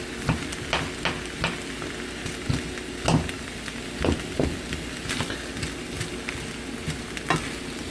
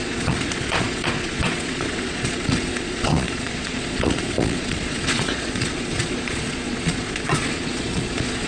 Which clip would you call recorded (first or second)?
first